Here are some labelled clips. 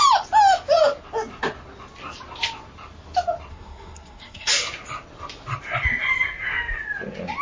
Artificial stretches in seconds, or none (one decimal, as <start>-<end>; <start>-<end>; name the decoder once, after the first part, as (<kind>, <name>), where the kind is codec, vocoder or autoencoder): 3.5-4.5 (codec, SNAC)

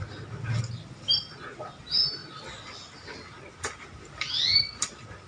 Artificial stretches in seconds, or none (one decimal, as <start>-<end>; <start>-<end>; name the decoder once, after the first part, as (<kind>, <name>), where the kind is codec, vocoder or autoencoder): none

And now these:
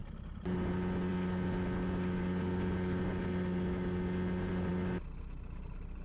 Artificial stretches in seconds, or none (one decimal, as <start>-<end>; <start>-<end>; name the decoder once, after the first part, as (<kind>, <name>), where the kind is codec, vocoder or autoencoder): none

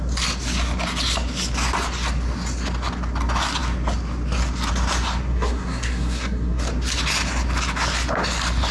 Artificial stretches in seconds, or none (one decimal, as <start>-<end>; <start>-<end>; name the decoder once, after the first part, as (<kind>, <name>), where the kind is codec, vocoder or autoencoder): 5.3-6.6 (codec, SNAC)